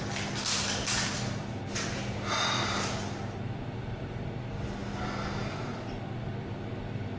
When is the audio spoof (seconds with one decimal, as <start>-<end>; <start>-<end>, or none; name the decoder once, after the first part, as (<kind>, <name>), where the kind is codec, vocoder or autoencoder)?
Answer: none